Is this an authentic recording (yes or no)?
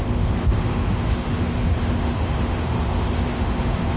no